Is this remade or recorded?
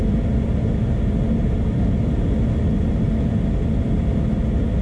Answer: recorded